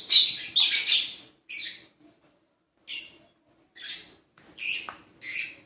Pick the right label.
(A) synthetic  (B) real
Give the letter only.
B